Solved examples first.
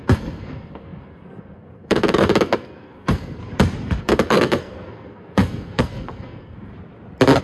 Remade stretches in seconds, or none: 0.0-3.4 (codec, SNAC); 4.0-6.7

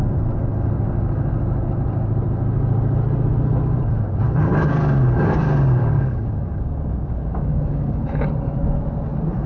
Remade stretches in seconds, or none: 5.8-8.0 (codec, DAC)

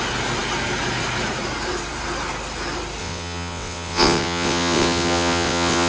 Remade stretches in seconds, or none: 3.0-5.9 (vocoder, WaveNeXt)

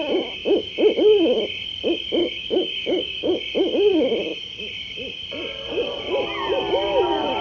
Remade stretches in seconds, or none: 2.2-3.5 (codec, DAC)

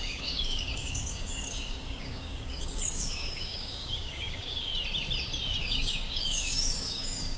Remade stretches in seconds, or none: 0.0-4.7 (codec, DAC); 5.6-7.4

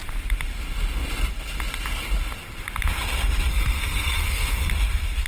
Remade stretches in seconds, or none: 3.5-4.7 (codec, SNAC)